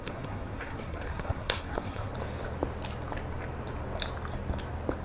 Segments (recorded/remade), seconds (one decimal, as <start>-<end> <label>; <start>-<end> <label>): 0.0-2.1 remade; 2.1-5.0 recorded